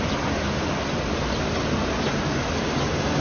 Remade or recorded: recorded